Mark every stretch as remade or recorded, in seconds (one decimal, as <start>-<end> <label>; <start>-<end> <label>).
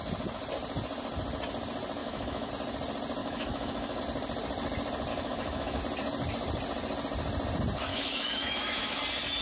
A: 0.0-2.0 recorded; 2.0-2.5 remade; 2.5-3.2 recorded; 3.2-4.0 remade; 4.0-5.1 recorded; 5.1-5.8 remade; 5.8-7.9 recorded; 7.9-9.0 remade; 9.0-9.4 recorded